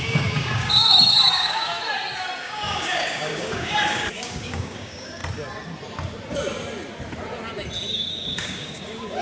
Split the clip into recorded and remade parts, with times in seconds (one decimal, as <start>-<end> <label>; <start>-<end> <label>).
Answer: 0.0-1.8 remade; 1.8-2.4 recorded; 2.4-5.2 remade; 5.2-7.9 recorded; 7.9-9.2 remade